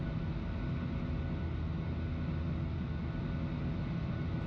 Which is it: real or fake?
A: real